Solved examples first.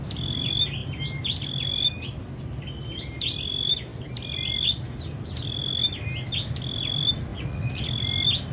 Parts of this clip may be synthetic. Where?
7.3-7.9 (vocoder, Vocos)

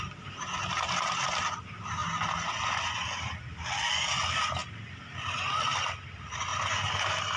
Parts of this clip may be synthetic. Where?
none

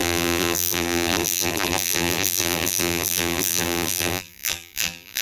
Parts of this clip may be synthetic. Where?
0.0-5.2 (vocoder, BigVGAN v2)

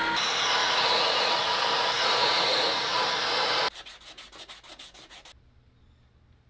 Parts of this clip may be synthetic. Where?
0.6-3.1 (vocoder, Vocos)